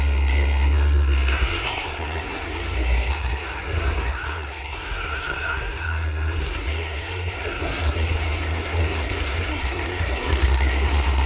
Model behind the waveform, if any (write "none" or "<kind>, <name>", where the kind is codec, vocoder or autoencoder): codec, SNAC